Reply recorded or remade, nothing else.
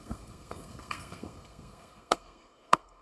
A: remade